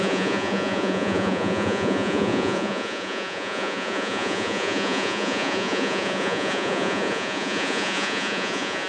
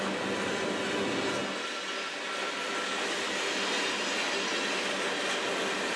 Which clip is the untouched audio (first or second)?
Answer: second